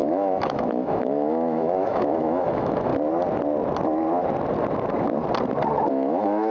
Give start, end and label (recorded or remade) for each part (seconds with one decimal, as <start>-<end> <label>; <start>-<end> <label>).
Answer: 0.0-2.9 remade; 2.9-5.9 recorded; 5.9-6.5 remade